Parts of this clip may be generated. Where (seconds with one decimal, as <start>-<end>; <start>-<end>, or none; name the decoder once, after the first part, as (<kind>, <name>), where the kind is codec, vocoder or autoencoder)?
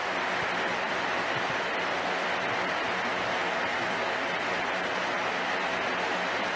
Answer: 3.7-4.2 (vocoder, BigVGAN v2)